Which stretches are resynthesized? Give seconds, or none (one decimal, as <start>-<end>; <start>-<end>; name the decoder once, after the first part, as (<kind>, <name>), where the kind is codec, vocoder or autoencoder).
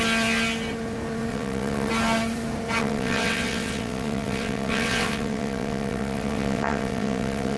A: 1.3-1.9 (vocoder, WaveNeXt); 2.8-7.6